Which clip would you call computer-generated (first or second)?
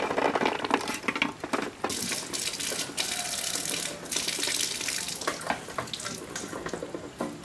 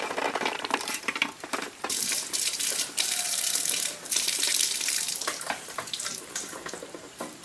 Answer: second